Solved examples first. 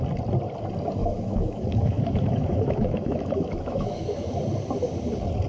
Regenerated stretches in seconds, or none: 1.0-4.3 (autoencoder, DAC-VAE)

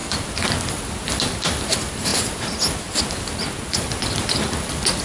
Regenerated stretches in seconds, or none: none

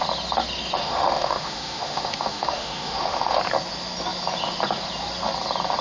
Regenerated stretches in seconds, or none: 0.8-3.4 (autoencoder, DAC-VAE)

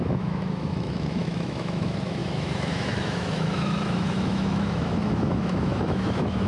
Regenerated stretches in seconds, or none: 0.0-6.5 (autoencoder, DAC-VAE)

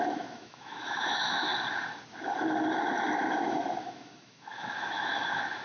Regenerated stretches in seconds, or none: 0.0-1.5 (autoencoder, DAC-VAE); 3.8-5.6

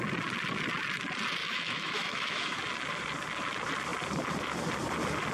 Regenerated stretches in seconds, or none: 1.4-2.6 (autoencoder, DAC-VAE)

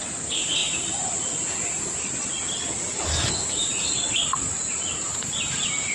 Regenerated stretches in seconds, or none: none

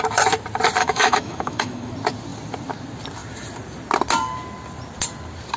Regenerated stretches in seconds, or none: 0.8-1.9 (autoencoder, DAC-VAE)